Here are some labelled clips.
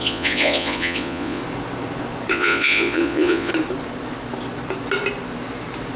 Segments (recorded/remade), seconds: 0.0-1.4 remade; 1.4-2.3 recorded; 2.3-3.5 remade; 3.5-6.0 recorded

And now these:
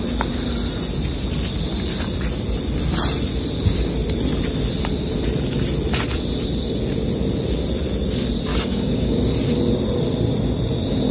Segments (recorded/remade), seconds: 0.0-8.5 recorded; 8.5-9.2 remade; 9.2-11.1 recorded

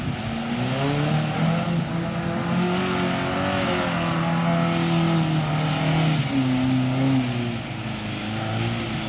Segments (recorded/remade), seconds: 0.0-9.1 recorded

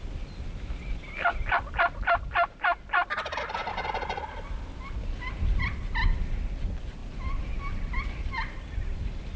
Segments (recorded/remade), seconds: 0.0-9.4 recorded

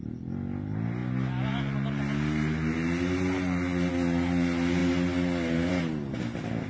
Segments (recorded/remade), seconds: 0.0-6.7 recorded

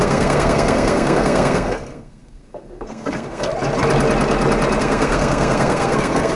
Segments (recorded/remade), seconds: 0.0-3.5 remade; 3.5-4.8 recorded; 4.8-6.4 remade

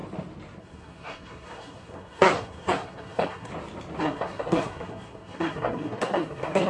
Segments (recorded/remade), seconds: 0.0-0.6 recorded; 0.6-3.5 remade; 3.5-4.0 recorded; 4.0-6.7 remade

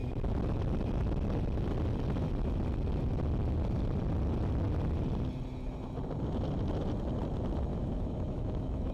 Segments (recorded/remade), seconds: 0.0-7.7 recorded; 7.7-8.9 remade